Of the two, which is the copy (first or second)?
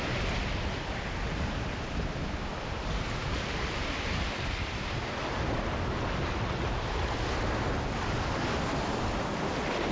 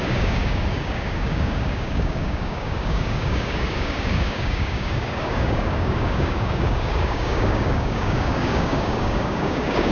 second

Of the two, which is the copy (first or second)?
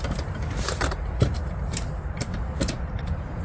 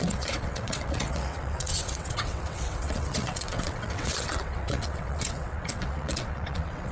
second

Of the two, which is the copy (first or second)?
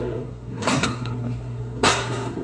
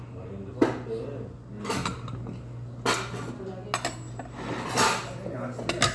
first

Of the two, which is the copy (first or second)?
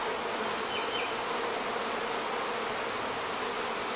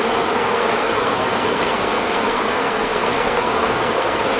second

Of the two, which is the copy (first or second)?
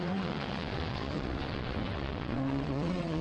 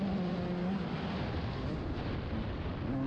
first